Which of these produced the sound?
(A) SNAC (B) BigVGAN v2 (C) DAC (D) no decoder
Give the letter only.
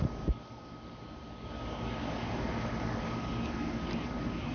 C